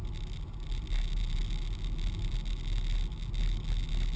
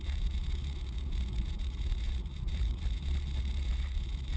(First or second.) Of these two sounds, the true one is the first